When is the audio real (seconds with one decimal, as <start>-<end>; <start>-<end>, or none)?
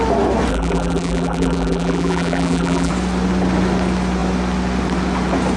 0.0-0.5; 2.9-5.6